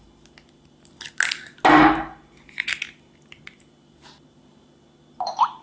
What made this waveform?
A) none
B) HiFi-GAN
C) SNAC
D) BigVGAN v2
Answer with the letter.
A